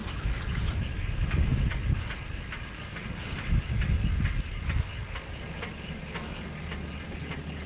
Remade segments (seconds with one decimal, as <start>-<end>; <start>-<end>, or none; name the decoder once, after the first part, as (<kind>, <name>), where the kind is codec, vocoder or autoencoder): 0.0-0.8 (vocoder, BigVGAN v2)

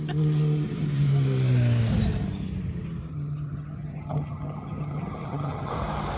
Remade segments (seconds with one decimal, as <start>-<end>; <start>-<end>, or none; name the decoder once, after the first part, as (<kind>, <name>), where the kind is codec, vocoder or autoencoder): 3.1-5.7 (vocoder, HiFi-GAN)

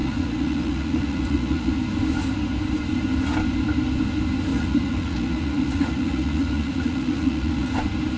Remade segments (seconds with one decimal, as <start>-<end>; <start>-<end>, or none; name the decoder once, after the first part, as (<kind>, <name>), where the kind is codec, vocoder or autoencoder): 0.0-1.7 (vocoder, Vocos); 4.5-7.7

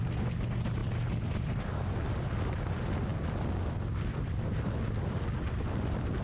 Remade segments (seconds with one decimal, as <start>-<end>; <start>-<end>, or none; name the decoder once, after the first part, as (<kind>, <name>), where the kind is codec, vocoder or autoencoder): none

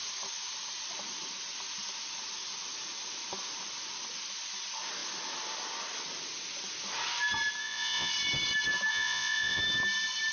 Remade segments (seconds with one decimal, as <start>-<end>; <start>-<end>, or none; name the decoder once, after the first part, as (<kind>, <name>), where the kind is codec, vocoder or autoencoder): 7.6-8.1 (vocoder, Vocos); 8.9-9.6

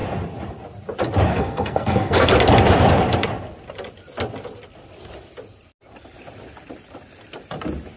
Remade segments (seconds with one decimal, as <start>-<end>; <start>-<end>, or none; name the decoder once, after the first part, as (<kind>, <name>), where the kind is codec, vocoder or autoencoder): 1.3-2.3 (codec, SNAC)

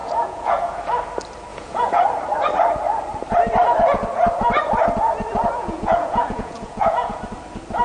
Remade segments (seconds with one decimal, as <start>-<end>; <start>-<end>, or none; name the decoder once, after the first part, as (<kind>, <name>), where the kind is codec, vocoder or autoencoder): 0.0-0.8 (vocoder, Vocos); 1.5-2.0; 5.6-7.2

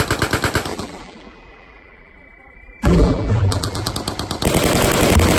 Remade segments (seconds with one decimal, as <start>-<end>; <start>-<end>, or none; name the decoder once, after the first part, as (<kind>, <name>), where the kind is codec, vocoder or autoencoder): 0.7-3.9 (vocoder, BigVGAN v2)